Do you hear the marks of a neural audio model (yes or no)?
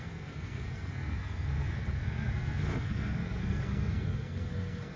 yes